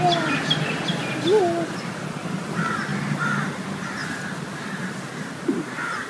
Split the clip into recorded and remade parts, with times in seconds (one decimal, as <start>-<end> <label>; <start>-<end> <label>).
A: 0.0-6.1 recorded